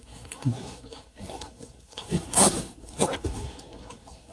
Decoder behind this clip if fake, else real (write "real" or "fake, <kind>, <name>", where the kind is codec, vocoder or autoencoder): fake, codec, SNAC